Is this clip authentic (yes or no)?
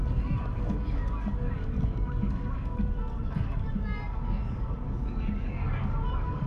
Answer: no